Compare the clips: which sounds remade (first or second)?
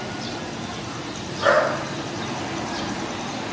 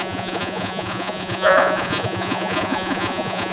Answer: second